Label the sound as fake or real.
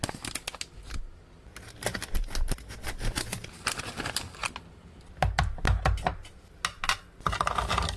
real